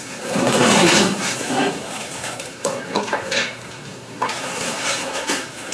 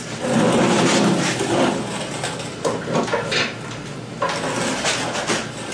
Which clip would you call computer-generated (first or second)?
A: first